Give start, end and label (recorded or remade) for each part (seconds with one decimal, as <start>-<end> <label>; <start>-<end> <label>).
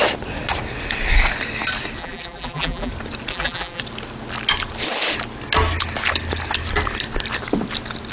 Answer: 0.0-2.0 recorded; 2.0-2.9 remade; 2.9-3.3 recorded; 3.3-3.8 remade; 3.8-8.1 recorded